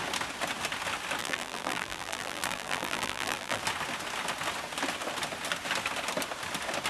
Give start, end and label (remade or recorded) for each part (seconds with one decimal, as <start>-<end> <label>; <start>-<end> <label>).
0.0-1.2 recorded; 1.2-3.6 remade; 3.6-6.9 recorded

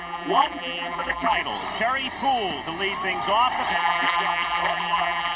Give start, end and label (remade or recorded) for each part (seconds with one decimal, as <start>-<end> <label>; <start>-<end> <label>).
0.0-1.4 remade; 1.4-3.7 recorded; 3.7-5.4 remade

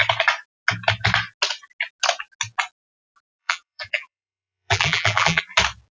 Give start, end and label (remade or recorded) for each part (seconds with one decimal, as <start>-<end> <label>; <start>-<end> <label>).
0.0-3.4 recorded; 3.4-5.4 remade; 5.4-6.0 recorded